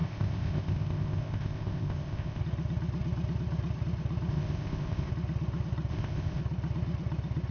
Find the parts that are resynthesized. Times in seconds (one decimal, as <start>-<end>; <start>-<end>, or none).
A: 0.0-2.4; 4.3-5.1; 5.9-6.4